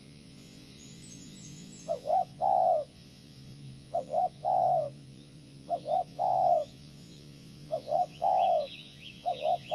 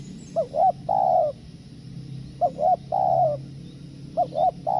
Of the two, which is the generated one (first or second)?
first